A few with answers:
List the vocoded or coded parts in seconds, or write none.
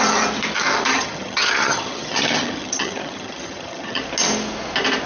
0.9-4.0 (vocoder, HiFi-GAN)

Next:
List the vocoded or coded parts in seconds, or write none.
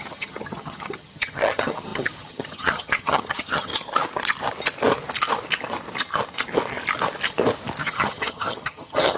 0.0-3.7 (vocoder, HiFi-GAN); 7.8-9.2